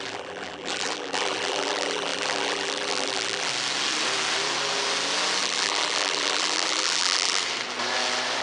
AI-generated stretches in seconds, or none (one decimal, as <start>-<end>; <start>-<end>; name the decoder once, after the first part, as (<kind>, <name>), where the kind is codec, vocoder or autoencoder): 0.0-3.5 (vocoder, BigVGAN v2); 5.4-7.4